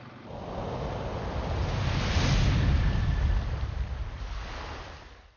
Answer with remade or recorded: recorded